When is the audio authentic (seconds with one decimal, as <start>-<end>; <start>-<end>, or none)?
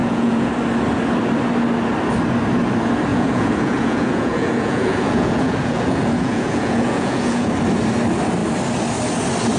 0.5-3.1; 7.5-9.6